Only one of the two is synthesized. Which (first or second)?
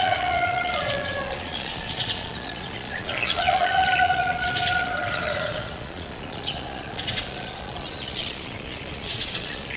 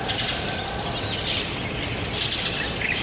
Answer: first